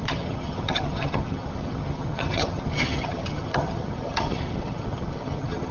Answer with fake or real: fake